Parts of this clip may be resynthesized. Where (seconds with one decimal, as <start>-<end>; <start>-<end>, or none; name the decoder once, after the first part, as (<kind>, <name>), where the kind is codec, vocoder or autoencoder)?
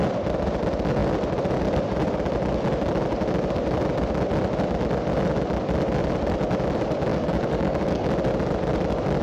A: 7.1-8.1 (codec, DAC)